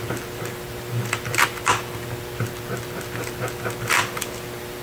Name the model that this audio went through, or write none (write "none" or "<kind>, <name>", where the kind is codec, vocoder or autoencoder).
vocoder, BigVGAN v2